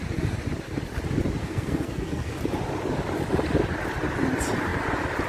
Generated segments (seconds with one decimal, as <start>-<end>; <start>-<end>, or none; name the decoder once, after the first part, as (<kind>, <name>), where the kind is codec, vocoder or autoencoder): 1.4-2.4 (codec, SNAC)